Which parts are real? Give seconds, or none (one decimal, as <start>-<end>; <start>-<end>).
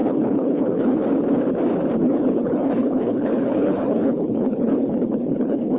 1.0-2.0